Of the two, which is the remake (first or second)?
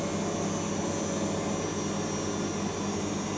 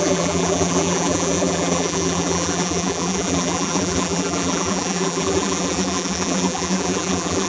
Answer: second